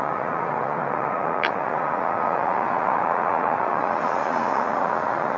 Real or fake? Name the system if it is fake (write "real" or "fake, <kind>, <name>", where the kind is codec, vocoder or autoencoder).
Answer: fake, vocoder, Vocos